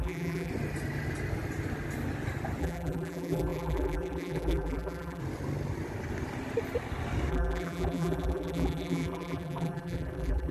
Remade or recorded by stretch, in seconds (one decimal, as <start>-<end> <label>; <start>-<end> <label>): 0.0-0.5 remade; 0.5-2.6 recorded; 2.6-5.2 remade; 5.2-7.3 recorded; 7.3-10.5 remade